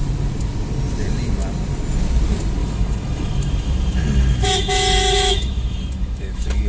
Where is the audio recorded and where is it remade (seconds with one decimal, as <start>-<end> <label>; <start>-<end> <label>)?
0.0-2.6 recorded; 2.6-6.7 remade